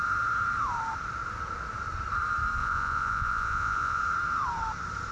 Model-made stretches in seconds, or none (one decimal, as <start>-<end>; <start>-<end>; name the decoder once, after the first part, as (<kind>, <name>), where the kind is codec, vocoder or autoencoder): 2.6-4.0 (vocoder, Vocos)